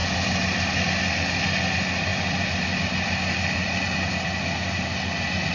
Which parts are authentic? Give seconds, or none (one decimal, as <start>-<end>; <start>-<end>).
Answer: 0.0-5.5